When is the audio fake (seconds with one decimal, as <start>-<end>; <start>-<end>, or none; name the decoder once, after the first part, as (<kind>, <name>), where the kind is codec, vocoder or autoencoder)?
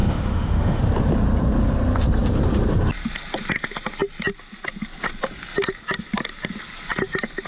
0.0-0.8 (autoencoder, DAC-VAE)